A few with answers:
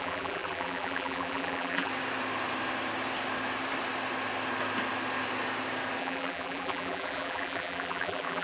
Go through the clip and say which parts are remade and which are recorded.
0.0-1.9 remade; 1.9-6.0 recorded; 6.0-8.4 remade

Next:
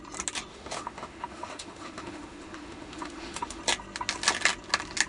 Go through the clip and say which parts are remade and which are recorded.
0.0-0.5 recorded; 0.5-3.6 remade; 3.6-5.1 recorded

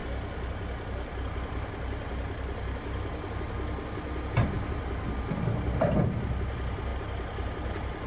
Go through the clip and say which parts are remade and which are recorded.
0.0-6.9 recorded; 6.9-8.1 remade